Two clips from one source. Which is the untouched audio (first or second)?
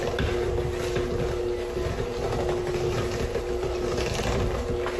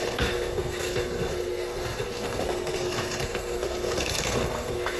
first